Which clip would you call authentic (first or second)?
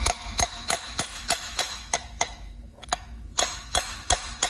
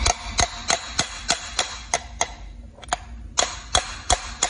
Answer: second